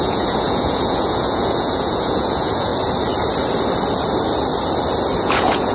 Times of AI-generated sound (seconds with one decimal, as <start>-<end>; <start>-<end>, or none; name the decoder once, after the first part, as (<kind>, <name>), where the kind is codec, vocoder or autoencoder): 0.0-2.7 (vocoder, Vocos); 5.2-5.7